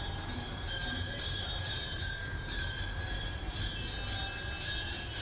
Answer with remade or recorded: recorded